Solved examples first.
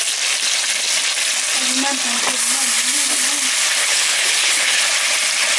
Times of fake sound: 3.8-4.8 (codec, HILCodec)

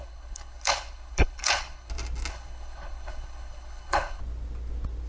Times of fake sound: 0.0-1.9 (codec, HILCodec); 2.3-4.2